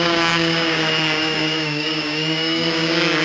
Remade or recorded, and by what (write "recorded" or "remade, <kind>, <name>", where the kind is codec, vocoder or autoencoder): remade, codec, DAC